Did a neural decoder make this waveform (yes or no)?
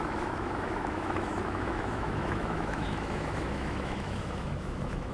yes